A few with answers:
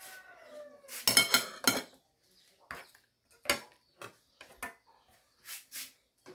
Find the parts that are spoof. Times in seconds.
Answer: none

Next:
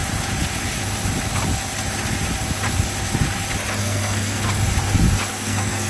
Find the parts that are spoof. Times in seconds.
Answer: 3.8-4.6 (codec, SNAC); 5.3-5.9

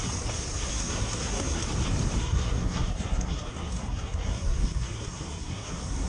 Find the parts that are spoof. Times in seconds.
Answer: 0.7-1.6 (codec, SNAC); 2.2-6.1

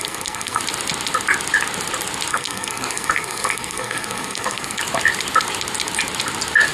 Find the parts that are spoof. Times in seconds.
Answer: 0.0-0.6 (codec, SNAC); 2.3-4.8